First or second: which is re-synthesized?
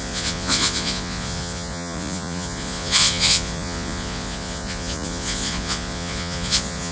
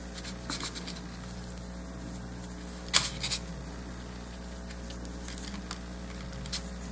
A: first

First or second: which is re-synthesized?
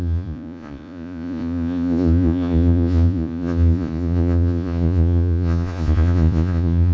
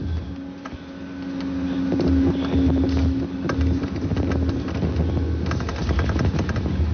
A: first